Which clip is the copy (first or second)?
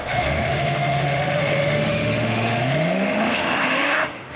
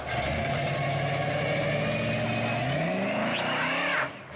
first